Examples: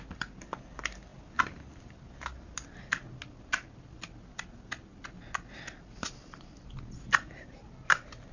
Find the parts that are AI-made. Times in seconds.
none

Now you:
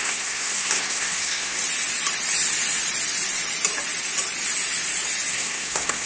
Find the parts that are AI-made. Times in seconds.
0.0-1.6 (codec, SNAC); 5.3-6.1

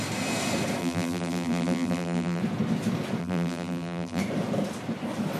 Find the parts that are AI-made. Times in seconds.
0.8-2.4 (vocoder, BigVGAN v2); 3.2-4.2

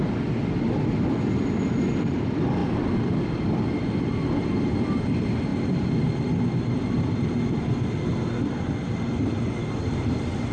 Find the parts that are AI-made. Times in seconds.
none

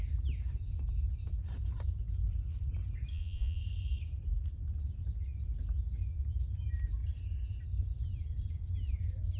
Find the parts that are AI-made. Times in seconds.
3.1-3.6 (vocoder, Vocos)